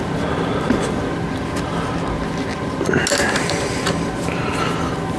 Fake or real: real